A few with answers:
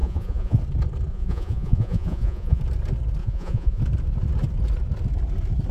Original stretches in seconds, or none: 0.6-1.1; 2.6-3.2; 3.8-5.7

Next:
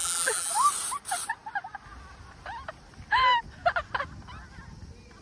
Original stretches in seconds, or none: 0.5-5.2